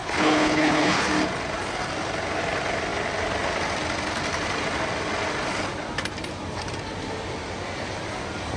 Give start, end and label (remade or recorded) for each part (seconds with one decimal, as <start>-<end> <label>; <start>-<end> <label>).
0.0-1.1 remade; 1.1-8.6 recorded